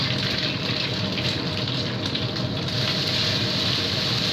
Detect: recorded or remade recorded